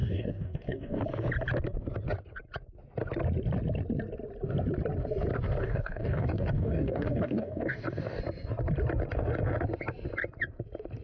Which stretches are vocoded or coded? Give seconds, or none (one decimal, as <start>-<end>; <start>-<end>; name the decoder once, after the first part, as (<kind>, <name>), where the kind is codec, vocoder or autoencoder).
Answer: 0.0-1.0 (codec, DAC); 5.6-8.2